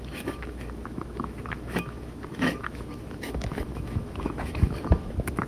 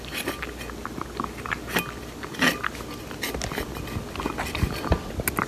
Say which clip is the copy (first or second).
first